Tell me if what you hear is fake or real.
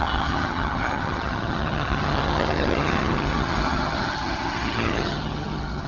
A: fake